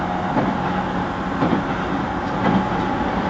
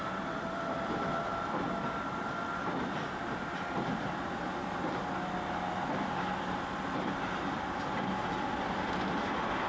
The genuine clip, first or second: first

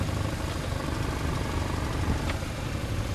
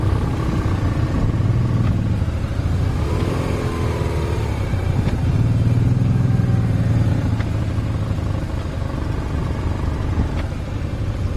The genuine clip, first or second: second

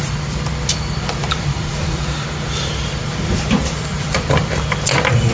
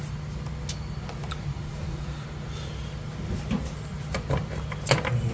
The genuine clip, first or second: second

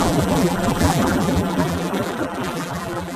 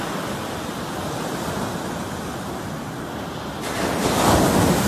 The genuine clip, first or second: second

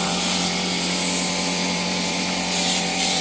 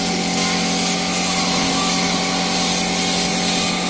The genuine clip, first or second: second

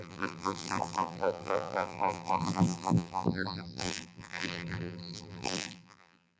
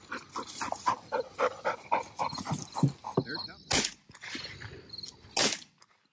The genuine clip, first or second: second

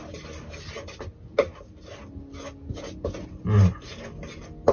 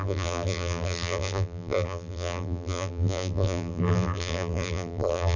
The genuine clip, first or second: first